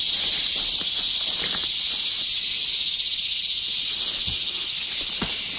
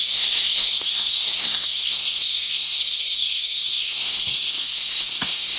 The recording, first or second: first